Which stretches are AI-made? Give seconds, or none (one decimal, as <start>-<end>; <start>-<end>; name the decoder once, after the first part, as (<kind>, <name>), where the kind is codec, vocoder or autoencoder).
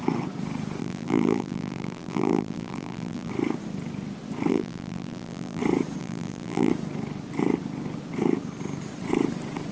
0.8-3.3 (vocoder, BigVGAN v2); 4.5-5.6; 6.0-6.7